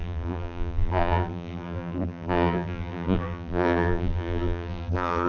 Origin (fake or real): fake